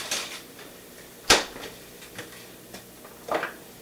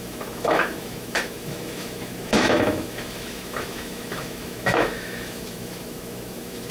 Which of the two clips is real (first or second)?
first